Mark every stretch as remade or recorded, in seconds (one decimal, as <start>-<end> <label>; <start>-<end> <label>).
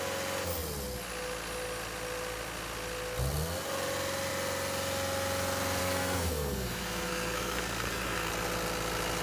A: 0.0-5.8 recorded; 5.8-8.3 remade; 8.3-9.2 recorded